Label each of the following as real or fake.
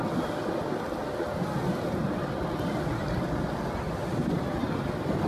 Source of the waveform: real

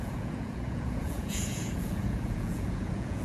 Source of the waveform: fake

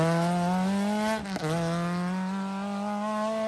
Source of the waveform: real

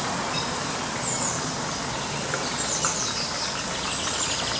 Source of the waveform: real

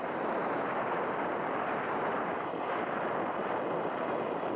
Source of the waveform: fake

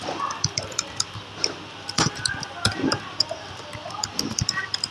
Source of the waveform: fake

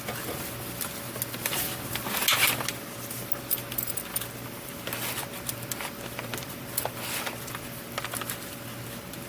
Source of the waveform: real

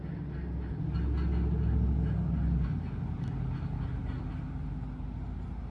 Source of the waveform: real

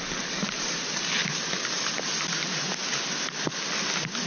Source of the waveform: real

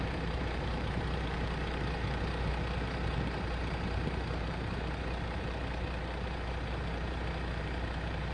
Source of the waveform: fake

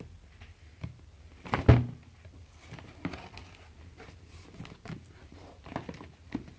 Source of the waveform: real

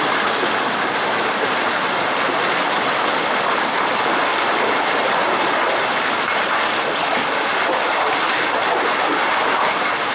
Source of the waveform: real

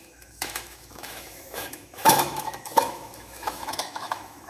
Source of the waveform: fake